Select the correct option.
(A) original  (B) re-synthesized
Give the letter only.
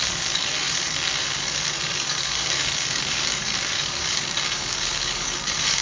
B